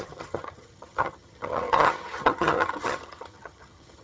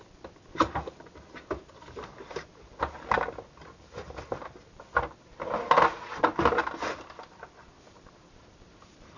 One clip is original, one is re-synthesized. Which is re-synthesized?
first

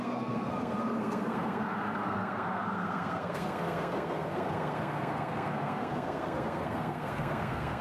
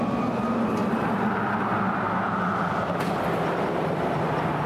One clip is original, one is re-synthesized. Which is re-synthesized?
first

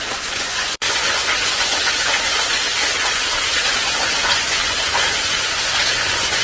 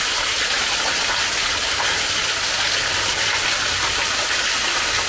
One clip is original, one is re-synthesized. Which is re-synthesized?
first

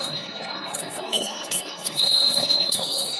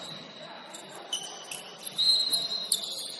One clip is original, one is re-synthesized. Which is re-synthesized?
first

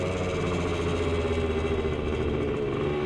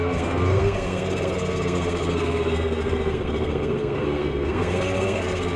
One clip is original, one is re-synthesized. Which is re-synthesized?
second